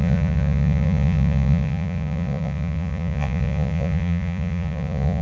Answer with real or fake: fake